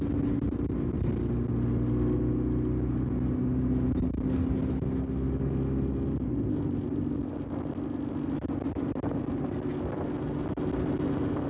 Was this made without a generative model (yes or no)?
yes